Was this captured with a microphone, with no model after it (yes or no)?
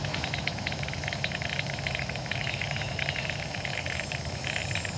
no